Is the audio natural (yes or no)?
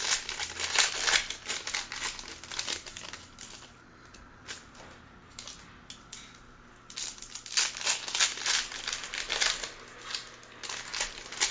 yes